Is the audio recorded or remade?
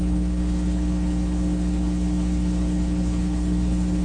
remade